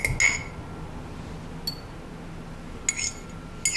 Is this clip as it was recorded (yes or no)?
yes